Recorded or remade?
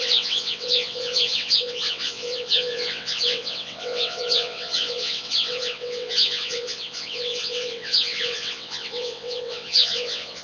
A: remade